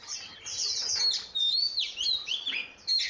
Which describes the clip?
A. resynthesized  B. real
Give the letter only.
B